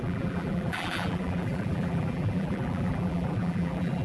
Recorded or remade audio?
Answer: remade